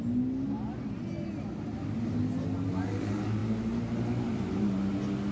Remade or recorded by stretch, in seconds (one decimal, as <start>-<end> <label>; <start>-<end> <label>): 0.0-5.3 recorded